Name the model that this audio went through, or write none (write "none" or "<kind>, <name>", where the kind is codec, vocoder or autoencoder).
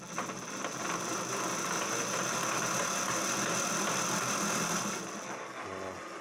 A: none